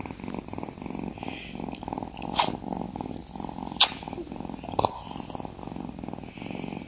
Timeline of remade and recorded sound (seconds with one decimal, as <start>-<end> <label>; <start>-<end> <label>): 0.0-6.9 recorded